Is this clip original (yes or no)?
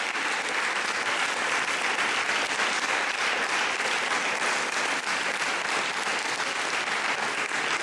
yes